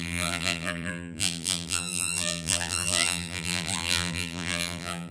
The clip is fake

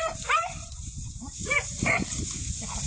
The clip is fake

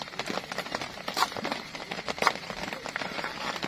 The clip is fake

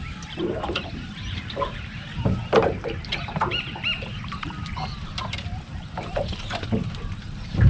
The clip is fake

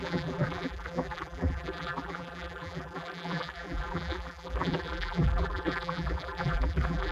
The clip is fake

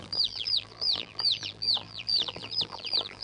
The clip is fake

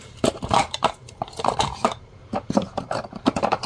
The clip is fake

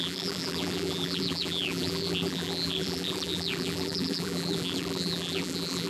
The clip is fake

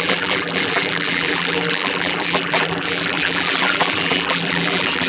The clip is fake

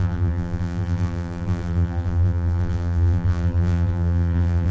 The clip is fake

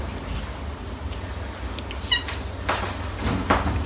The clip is real